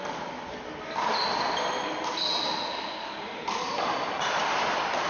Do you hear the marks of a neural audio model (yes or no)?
no